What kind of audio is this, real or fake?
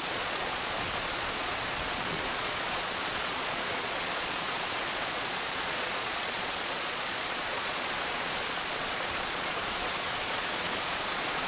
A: fake